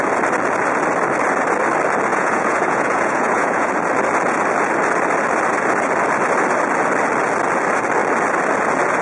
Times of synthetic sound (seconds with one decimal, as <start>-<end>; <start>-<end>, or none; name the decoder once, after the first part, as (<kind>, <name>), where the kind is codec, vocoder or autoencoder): 2.1-3.7 (vocoder, Vocos)